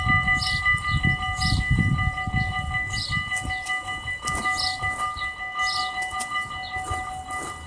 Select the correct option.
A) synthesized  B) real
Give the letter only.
B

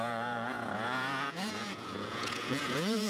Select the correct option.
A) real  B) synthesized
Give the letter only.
B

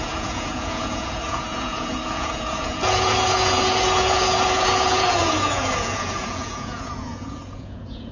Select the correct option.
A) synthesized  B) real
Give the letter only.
A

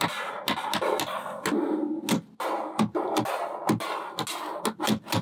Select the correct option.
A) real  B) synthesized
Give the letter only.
A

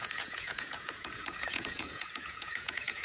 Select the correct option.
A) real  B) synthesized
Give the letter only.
B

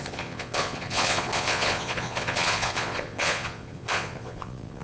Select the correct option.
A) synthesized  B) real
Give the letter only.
A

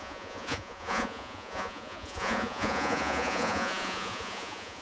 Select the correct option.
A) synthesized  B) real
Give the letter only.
A